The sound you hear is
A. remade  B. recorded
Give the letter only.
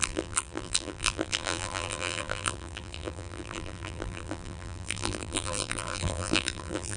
A